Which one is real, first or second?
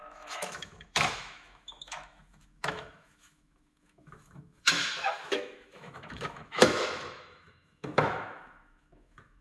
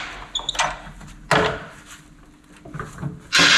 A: second